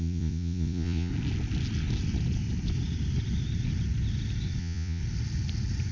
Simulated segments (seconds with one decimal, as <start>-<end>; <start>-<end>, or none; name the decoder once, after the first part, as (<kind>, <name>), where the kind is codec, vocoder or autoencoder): 0.0-1.1 (vocoder, Vocos); 4.6-5.0